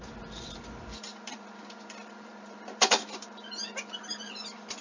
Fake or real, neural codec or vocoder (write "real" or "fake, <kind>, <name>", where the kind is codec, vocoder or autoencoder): fake, vocoder, BigVGAN v2